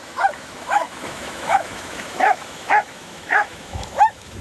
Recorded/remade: remade